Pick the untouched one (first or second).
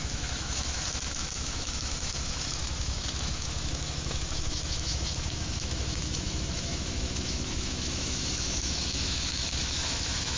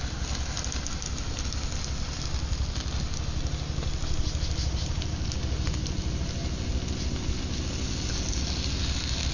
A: second